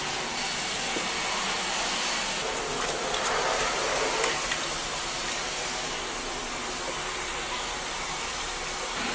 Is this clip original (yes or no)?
yes